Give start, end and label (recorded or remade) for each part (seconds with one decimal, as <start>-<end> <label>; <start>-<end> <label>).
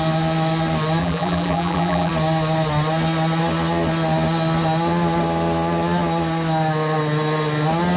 0.0-1.0 recorded; 1.0-2.1 remade; 2.1-8.0 recorded